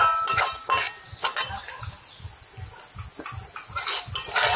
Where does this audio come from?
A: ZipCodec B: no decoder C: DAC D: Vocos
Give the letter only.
B